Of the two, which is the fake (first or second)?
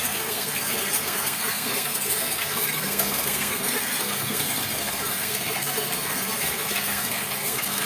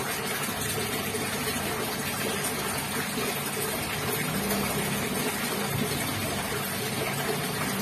first